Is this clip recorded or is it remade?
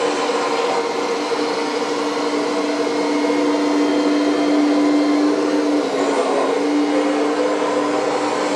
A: recorded